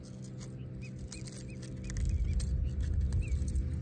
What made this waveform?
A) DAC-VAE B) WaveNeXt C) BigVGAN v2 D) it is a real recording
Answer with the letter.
D